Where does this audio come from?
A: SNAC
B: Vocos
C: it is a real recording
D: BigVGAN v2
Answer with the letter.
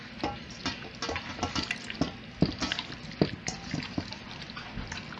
C